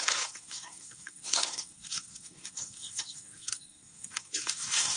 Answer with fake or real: fake